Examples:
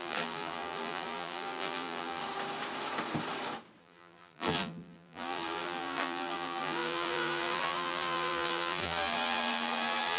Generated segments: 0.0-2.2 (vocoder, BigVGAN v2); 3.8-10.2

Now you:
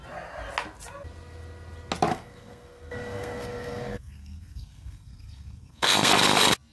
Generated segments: 2.1-6.1 (codec, SNAC)

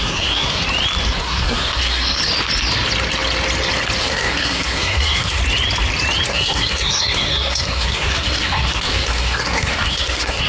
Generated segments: 0.0-0.6 (codec, SNAC); 1.2-2.2; 4.0-5.4; 6.3-10.5